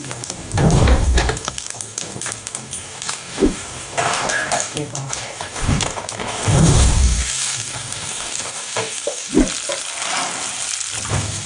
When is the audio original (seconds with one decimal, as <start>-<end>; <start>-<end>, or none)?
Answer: 9.3-11.1

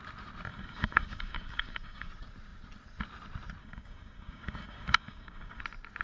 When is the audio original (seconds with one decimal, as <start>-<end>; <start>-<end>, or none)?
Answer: 0.0-0.5; 2.1-3.6; 5.6-6.0

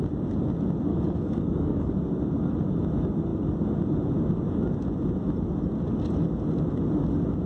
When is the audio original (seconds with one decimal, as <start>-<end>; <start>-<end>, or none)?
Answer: 0.0-0.9; 1.9-7.5